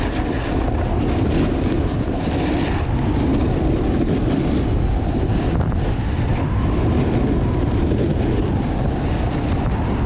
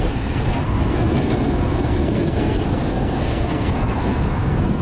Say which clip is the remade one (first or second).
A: second